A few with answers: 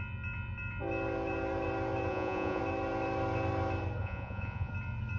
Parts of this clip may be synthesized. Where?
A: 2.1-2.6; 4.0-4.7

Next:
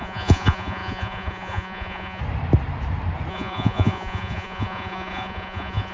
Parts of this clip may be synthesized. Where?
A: 0.0-2.2; 3.3-5.9

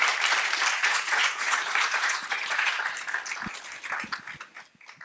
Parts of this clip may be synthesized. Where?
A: 0.7-2.8

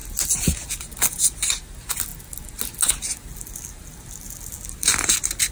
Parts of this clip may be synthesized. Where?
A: none

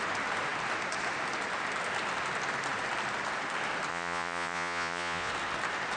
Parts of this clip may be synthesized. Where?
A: 3.9-5.3

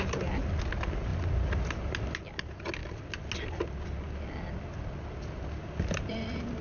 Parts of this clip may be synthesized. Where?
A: none

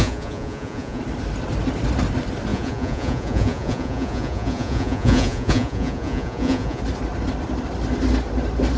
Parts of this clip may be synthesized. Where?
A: 0.0-1.0; 2.5-6.8

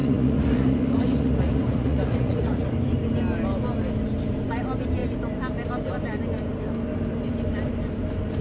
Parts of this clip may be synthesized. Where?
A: 0.0-2.7